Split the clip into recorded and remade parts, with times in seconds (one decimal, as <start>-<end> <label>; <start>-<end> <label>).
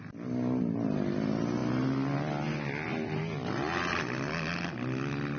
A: 0.0-5.4 recorded